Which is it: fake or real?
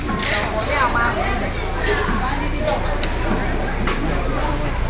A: real